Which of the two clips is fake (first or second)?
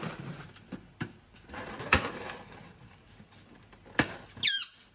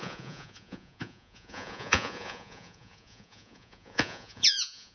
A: second